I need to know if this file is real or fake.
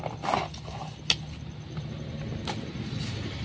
real